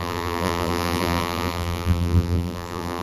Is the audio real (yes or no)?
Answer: no